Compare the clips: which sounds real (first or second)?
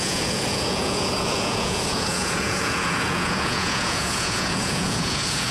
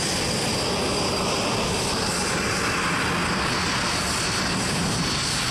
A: second